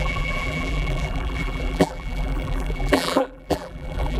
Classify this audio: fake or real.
fake